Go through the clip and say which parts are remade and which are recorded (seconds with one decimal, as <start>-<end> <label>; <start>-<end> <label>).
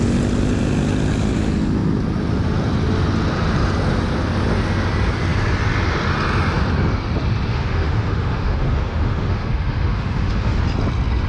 0.0-7.5 recorded; 7.5-10.6 remade; 10.6-11.3 recorded